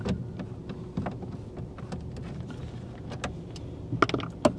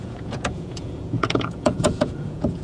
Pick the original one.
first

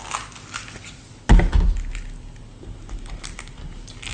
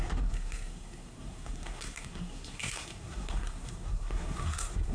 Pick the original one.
first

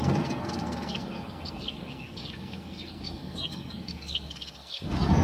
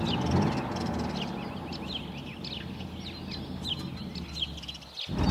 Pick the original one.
second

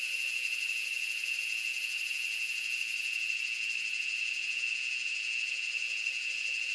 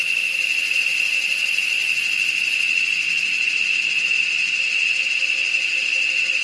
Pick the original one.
second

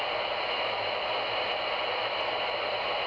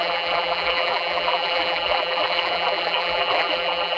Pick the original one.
first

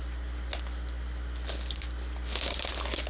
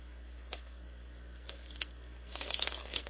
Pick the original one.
first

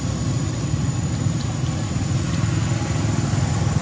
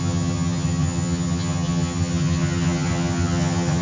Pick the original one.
first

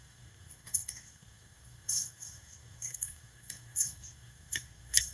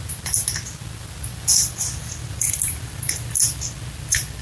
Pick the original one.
second